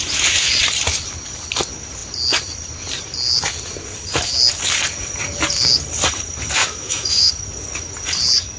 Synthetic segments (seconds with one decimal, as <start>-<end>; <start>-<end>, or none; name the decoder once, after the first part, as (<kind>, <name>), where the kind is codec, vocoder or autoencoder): 6.6-7.3 (autoencoder, DAC-VAE)